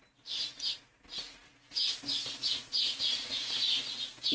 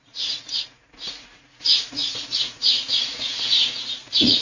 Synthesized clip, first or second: second